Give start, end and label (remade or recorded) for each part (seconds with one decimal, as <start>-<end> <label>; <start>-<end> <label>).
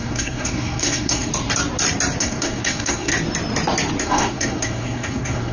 0.0-1.3 remade; 1.3-2.2 recorded; 2.2-3.1 remade; 3.1-4.0 recorded; 4.0-5.5 remade